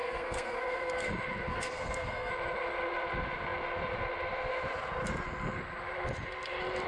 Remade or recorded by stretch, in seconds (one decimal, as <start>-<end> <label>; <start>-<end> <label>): 0.0-1.1 remade; 1.1-1.5 recorded; 1.5-2.3 remade; 2.3-6.9 recorded